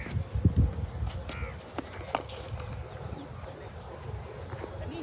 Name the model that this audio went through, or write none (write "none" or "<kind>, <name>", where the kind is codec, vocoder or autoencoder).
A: none